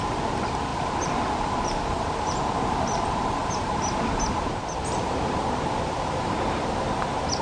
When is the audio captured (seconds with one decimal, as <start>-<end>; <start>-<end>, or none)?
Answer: 0.0-0.7; 2.3-3.4; 6.8-7.4